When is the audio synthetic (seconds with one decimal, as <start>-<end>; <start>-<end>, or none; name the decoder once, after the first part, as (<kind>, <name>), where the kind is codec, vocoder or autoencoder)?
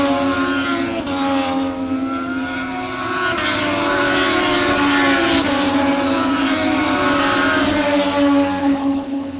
8.6-9.4 (codec, HILCodec)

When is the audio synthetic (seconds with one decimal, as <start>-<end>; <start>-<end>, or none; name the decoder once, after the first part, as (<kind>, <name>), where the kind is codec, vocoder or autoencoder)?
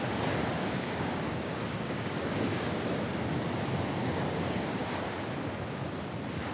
0.6-2.7 (codec, DAC); 4.0-5.0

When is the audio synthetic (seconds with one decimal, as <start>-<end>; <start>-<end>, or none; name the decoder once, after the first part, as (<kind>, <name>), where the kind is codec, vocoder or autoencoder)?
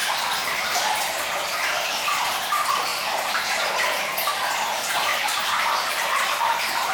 2.9-3.4 (vocoder, BigVGAN v2); 5.1-6.9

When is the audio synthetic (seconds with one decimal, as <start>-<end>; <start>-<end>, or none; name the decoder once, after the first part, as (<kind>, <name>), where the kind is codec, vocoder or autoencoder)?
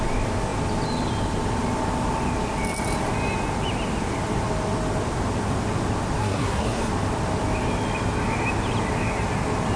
6.2-6.9 (codec, SNAC)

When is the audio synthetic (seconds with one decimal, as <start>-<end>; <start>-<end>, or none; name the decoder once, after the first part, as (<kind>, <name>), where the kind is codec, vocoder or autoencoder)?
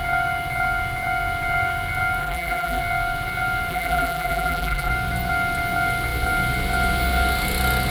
2.2-2.8 (vocoder, BigVGAN v2); 3.7-4.9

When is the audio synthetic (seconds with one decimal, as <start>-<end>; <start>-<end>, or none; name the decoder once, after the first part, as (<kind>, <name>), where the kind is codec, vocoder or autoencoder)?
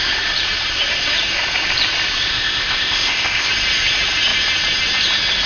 2.3-3.5 (codec, ZipCodec)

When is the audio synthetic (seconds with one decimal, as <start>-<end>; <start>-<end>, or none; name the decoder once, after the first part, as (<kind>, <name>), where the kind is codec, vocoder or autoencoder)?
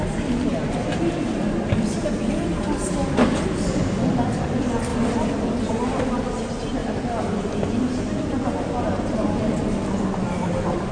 none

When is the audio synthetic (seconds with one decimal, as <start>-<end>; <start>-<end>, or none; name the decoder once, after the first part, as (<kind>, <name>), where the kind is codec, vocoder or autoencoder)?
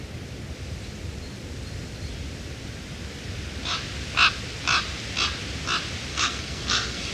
6.1-7.1 (codec, SNAC)